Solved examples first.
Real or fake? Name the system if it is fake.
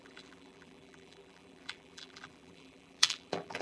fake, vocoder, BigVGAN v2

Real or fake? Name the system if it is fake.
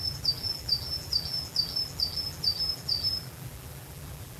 fake, vocoder, BigVGAN v2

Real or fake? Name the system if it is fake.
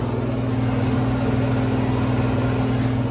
real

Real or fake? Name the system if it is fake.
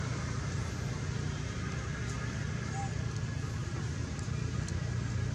real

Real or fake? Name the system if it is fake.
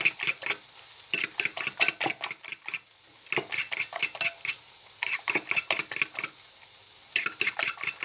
real